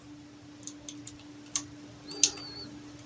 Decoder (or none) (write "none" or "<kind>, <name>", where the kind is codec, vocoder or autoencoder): none